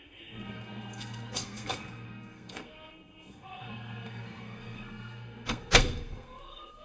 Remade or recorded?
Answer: remade